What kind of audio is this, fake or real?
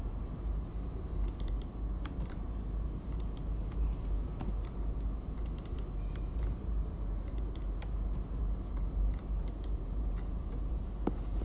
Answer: fake